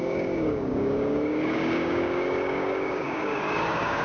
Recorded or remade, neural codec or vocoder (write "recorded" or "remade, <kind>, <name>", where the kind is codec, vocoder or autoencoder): remade, codec, DAC